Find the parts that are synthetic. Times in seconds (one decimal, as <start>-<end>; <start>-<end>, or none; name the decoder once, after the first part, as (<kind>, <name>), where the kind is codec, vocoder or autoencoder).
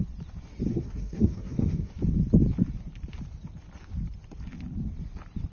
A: 0.7-1.9 (codec, SNAC)